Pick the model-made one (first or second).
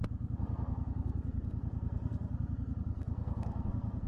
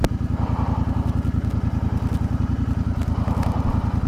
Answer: first